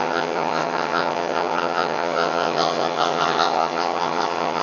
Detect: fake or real fake